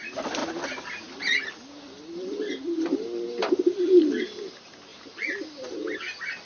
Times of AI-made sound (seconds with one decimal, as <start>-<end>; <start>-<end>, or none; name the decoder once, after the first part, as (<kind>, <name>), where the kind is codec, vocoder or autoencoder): none